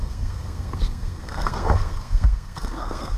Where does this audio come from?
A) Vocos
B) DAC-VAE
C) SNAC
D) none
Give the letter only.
C